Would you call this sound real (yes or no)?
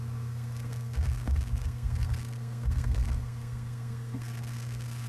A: no